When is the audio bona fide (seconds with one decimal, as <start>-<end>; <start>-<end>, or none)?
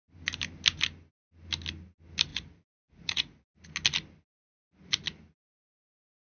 0.0-2.3; 3.5-6.4